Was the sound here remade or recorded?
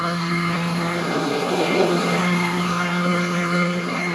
remade